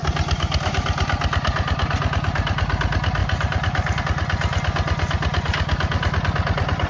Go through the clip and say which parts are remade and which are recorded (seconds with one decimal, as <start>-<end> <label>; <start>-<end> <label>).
0.0-3.2 recorded; 3.2-4.0 remade; 4.0-6.9 recorded